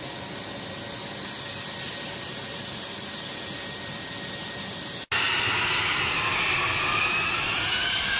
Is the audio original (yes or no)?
yes